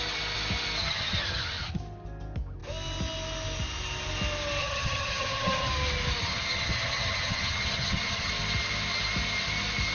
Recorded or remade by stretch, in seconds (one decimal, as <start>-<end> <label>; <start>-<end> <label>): 0.0-0.8 recorded; 0.8-1.8 remade; 1.8-4.6 recorded; 4.6-5.7 remade; 5.7-6.2 recorded; 6.2-8.3 remade; 8.3-9.9 recorded

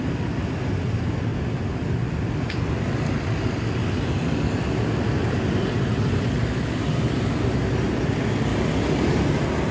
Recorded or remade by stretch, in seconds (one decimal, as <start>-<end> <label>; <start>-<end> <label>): 0.0-9.7 recorded

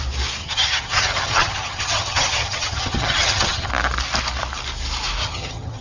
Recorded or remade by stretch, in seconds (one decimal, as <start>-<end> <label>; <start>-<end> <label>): 0.0-0.4 recorded; 0.4-3.7 remade; 3.7-5.2 recorded; 5.2-5.8 remade